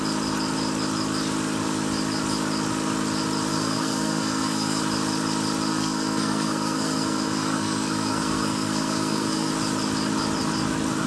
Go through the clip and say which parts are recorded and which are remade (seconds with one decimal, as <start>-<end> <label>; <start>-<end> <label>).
0.0-3.5 recorded; 3.5-4.8 remade; 4.8-5.7 recorded; 5.7-9.5 remade; 9.5-11.1 recorded